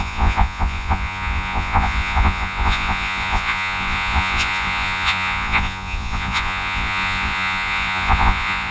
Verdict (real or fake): fake